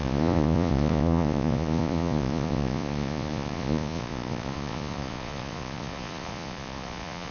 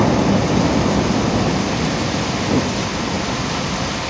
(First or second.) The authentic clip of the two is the second